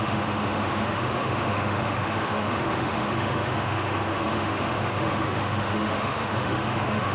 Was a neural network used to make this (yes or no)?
yes